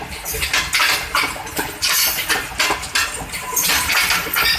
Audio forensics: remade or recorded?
recorded